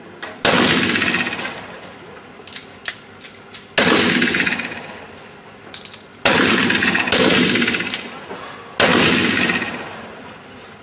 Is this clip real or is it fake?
real